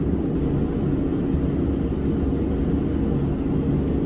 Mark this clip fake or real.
real